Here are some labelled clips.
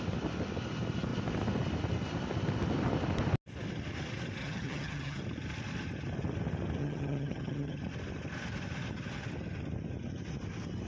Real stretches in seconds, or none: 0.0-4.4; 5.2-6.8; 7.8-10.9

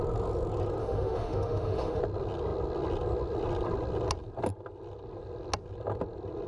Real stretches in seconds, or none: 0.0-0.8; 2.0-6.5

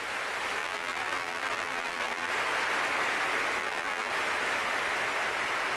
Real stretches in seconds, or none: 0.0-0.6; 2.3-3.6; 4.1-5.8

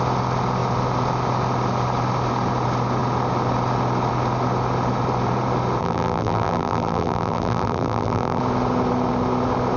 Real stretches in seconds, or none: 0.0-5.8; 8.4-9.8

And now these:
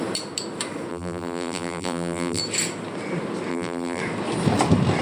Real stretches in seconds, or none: 0.0-0.9; 2.4-3.5; 4.0-5.0

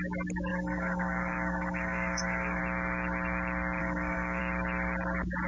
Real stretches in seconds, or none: 0.0-0.5; 2.6-3.8; 4.4-5.5